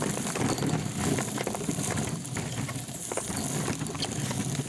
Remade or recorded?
recorded